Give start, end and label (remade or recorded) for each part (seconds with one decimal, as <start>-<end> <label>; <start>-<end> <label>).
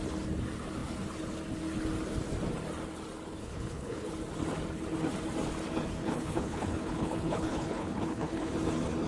0.0-3.4 recorded; 3.4-4.1 remade; 4.1-6.0 recorded; 6.0-8.5 remade; 8.5-9.1 recorded